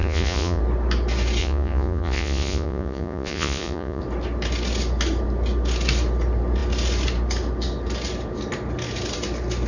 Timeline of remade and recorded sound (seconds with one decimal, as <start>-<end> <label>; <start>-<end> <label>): 0.0-0.6 remade; 0.6-1.4 recorded; 1.4-4.0 remade; 4.0-9.7 recorded